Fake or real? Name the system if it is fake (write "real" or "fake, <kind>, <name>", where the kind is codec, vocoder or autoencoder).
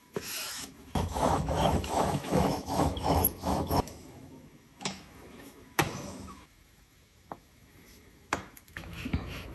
fake, autoencoder, DAC-VAE